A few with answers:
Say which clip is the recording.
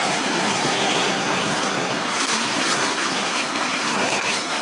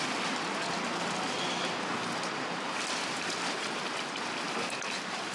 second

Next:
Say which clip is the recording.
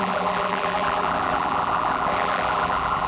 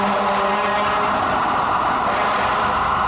second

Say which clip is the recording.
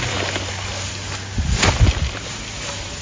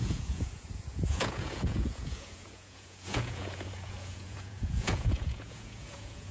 first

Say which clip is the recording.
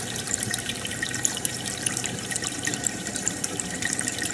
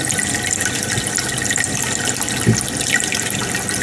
second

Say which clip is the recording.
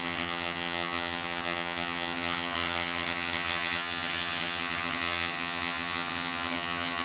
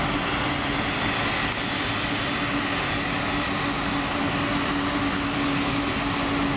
second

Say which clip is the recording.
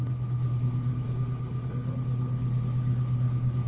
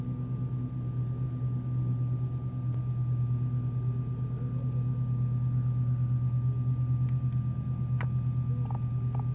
second